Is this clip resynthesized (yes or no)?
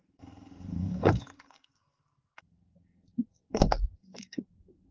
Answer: yes